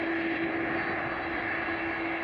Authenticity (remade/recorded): recorded